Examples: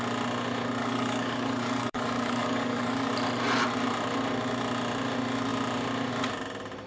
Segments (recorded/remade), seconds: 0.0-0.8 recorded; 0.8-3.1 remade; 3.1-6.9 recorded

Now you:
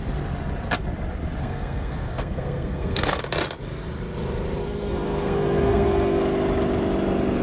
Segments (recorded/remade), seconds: 0.0-1.4 recorded; 1.4-3.2 remade; 3.2-4.6 recorded; 4.6-6.2 remade; 6.2-7.4 recorded

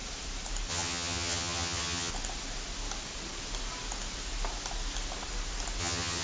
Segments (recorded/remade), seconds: 0.0-0.7 recorded; 0.7-2.1 remade; 2.1-5.8 recorded; 5.8-6.2 remade

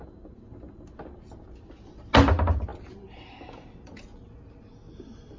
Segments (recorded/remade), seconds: 0.0-5.4 recorded

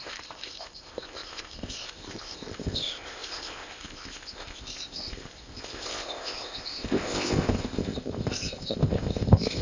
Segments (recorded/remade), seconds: 0.0-9.6 remade

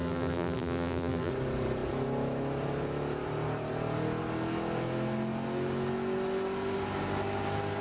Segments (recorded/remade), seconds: 0.0-1.3 remade; 1.3-7.8 recorded